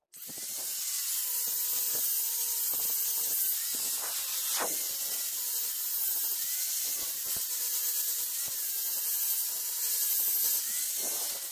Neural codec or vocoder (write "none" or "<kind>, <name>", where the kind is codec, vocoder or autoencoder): none